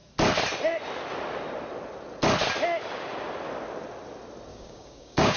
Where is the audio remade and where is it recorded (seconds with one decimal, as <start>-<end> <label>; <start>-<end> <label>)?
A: 0.0-4.5 recorded; 4.5-5.4 remade